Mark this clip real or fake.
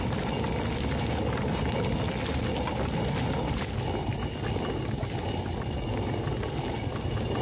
real